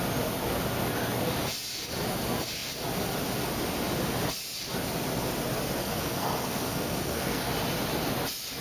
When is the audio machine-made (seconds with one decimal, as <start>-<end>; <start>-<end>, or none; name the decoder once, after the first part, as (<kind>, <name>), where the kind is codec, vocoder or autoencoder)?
5.8-7.5 (codec, SNAC)